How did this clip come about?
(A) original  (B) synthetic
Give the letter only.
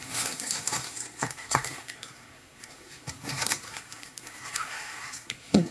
B